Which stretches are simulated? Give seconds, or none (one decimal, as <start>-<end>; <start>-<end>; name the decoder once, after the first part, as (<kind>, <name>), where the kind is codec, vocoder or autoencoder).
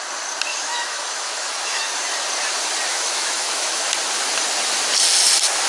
0.5-1.8 (autoencoder, DAC-VAE); 2.9-3.9